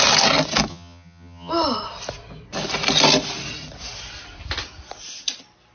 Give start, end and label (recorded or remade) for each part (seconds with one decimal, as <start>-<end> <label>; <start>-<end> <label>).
0.0-0.7 recorded; 0.7-1.5 remade; 1.5-5.7 recorded